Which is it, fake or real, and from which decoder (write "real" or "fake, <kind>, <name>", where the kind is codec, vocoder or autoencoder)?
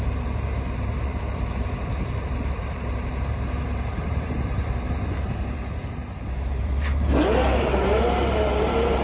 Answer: fake, vocoder, BigVGAN v2